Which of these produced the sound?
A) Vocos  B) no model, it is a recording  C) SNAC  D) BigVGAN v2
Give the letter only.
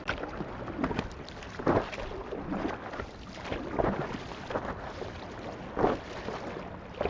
B